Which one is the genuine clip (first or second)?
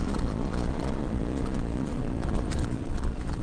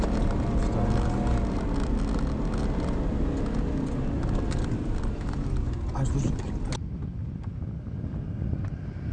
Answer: second